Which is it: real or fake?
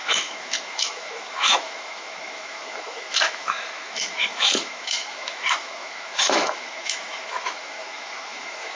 fake